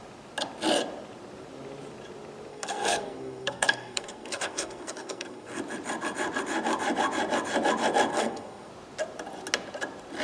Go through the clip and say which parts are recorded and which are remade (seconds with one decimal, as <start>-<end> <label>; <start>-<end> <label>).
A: 0.0-2.5 recorded; 2.5-5.6 remade; 5.6-8.1 recorded; 8.1-8.7 remade; 8.7-10.2 recorded